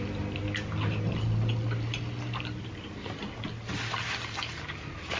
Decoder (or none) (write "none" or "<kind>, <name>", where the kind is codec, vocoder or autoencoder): none